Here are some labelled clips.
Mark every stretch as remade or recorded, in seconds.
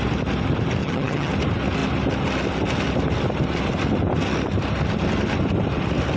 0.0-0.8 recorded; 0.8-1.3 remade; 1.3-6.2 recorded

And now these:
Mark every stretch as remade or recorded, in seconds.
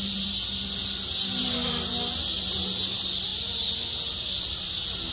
0.0-5.1 recorded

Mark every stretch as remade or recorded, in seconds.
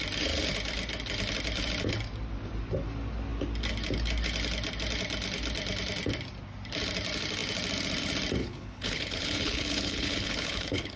0.0-8.4 recorded; 8.4-11.0 remade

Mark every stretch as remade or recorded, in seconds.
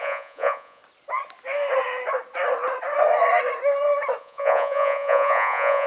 0.0-0.8 remade; 0.8-4.2 recorded; 4.2-5.9 remade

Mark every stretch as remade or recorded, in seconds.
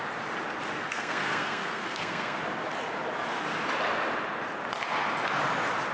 0.0-0.8 recorded; 0.8-2.4 remade; 2.4-5.9 recorded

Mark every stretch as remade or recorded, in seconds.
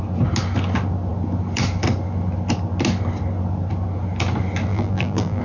0.0-4.7 recorded; 4.7-5.4 remade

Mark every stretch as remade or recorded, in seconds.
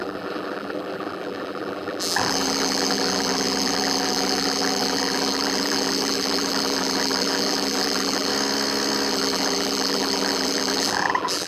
0.0-8.3 remade; 8.3-9.1 recorded; 9.1-11.5 remade